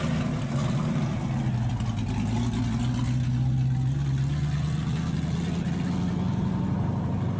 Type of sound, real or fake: real